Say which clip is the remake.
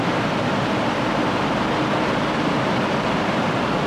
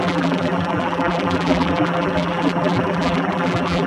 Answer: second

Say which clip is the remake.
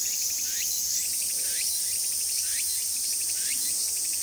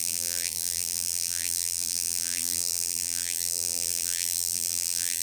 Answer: second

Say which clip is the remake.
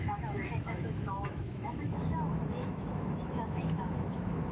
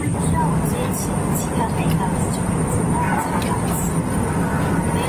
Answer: first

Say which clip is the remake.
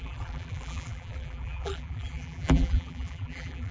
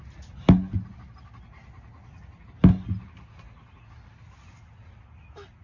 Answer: first